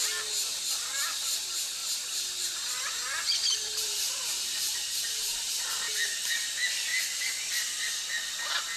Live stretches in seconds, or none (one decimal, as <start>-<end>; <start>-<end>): 0.0-1.8; 5.6-8.8

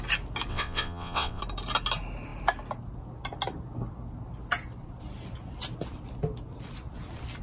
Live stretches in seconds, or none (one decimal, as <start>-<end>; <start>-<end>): 0.0-0.5; 1.4-7.4

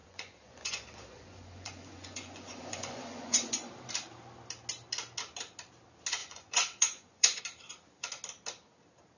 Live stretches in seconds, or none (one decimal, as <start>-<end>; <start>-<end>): 3.7-6.2; 7.4-9.2

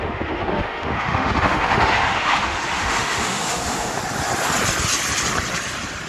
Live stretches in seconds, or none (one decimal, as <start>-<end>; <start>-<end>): 4.0-6.1